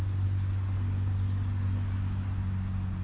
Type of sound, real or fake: real